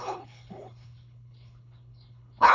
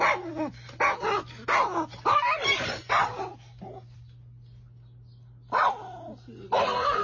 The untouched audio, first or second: second